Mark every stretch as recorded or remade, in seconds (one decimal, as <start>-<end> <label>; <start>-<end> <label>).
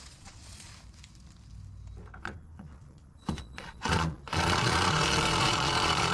0.0-0.7 remade; 0.7-2.2 recorded; 2.2-6.1 remade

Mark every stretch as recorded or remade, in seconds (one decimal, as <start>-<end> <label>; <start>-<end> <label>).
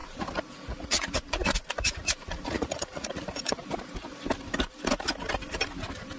0.0-3.7 remade; 3.7-6.2 recorded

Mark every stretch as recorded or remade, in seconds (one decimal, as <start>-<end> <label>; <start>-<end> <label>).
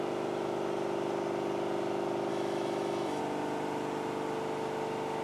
0.0-2.3 recorded; 2.3-3.2 remade; 3.2-5.2 recorded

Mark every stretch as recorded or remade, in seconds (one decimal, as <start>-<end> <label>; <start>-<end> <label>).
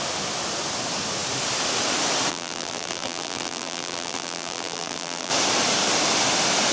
0.0-2.3 recorded; 2.3-5.3 remade; 5.3-6.7 recorded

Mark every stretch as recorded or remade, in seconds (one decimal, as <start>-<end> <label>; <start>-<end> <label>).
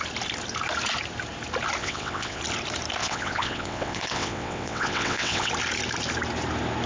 0.0-1.8 recorded; 1.8-2.4 remade; 2.4-3.0 recorded; 3.0-5.5 remade; 5.5-6.9 recorded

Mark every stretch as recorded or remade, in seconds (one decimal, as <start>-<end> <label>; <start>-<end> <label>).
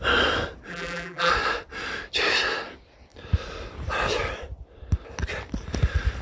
0.0-0.7 recorded; 0.7-1.3 remade; 1.3-6.2 recorded